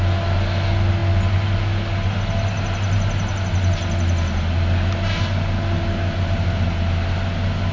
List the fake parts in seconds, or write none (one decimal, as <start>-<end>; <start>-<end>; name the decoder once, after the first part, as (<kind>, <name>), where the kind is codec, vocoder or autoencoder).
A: none